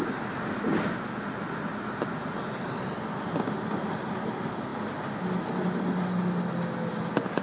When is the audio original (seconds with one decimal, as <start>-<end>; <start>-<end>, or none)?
0.0-7.4